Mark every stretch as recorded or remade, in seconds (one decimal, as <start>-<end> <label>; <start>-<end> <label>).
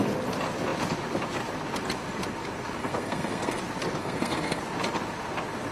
0.0-2.8 recorded; 2.8-3.6 remade; 3.6-4.0 recorded; 4.0-4.6 remade; 4.6-5.7 recorded